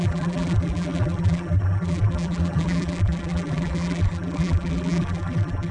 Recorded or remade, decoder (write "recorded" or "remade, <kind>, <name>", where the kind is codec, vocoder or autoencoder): remade, vocoder, BigVGAN v2